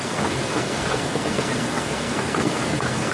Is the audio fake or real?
fake